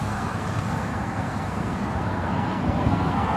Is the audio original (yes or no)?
no